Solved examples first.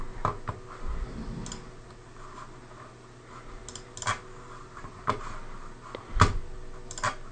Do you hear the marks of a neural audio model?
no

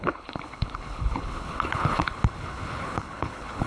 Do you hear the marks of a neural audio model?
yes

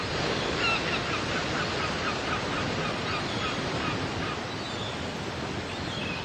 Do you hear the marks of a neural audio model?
no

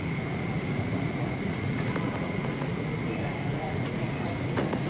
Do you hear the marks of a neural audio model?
yes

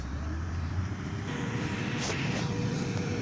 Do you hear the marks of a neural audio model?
yes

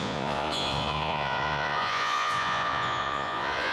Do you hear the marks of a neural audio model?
yes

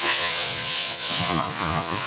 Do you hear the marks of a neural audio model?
yes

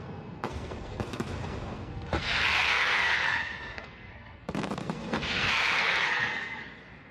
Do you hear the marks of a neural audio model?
yes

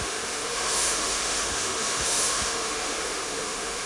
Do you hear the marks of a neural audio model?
yes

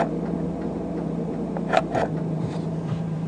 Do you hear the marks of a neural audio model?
yes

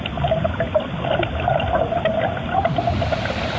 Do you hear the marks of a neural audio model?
no